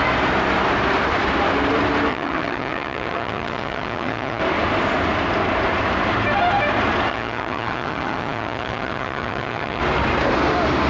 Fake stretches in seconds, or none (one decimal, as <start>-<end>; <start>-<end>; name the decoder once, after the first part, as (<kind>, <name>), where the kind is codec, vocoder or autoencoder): 2.1-4.4 (vocoder, HiFi-GAN); 7.1-9.8